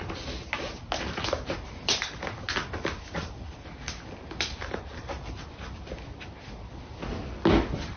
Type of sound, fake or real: real